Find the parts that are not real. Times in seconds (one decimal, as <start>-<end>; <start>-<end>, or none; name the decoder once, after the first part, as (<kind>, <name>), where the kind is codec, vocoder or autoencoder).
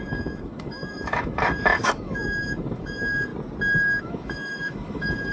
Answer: 0.0-3.3 (autoencoder, DAC-VAE); 4.0-5.3